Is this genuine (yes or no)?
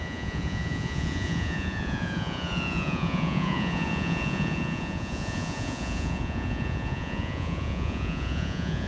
no